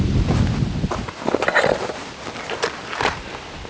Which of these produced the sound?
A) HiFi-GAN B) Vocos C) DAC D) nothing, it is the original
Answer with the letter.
D